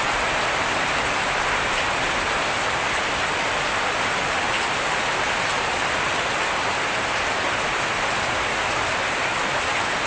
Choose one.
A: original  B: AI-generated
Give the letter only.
A